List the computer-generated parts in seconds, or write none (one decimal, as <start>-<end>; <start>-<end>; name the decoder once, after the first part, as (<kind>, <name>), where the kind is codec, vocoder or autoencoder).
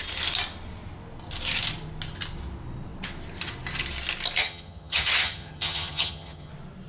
4.4-6.5 (vocoder, HiFi-GAN)